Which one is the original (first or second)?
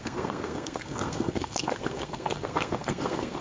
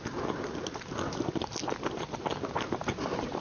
second